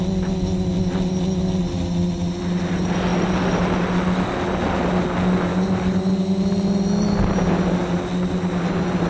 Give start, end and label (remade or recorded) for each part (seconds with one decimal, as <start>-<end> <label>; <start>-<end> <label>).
0.0-9.1 recorded